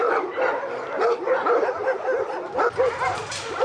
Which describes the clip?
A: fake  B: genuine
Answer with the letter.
B